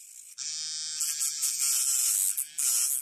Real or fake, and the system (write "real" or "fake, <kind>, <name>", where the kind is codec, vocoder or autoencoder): real